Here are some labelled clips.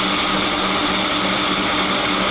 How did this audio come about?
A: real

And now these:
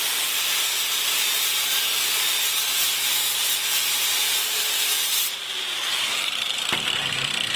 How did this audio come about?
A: fake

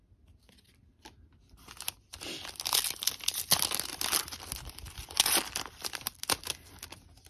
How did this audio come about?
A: real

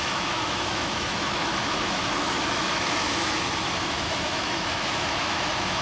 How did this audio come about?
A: fake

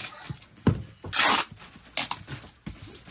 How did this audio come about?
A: real